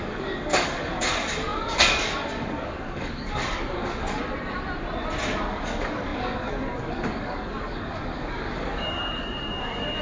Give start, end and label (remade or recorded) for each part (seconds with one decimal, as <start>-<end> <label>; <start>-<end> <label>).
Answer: 0.0-4.2 remade; 4.2-5.5 recorded; 5.5-10.0 remade